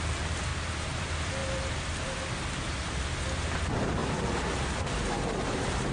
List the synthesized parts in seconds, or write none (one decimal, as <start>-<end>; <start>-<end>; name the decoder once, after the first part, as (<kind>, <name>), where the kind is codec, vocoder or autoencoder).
0.5-1.0 (vocoder, BigVGAN v2); 4.0-5.9